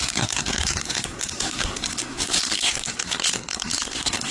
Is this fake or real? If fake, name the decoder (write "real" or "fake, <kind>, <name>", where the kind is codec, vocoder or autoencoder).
fake, codec, SNAC